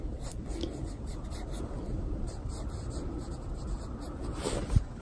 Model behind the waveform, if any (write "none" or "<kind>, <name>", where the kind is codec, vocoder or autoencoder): vocoder, BigVGAN v2